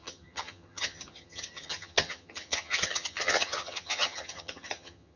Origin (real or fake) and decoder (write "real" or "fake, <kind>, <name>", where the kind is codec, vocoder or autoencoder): fake, vocoder, HiFi-GAN